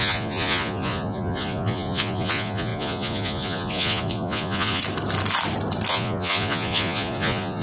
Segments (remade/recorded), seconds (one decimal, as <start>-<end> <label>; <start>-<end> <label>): 0.0-4.8 remade; 4.8-5.9 recorded; 5.9-7.6 remade